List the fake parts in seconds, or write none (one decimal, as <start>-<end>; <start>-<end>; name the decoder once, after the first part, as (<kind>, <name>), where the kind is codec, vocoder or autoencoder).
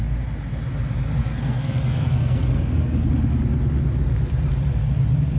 1.2-3.1 (codec, SNAC)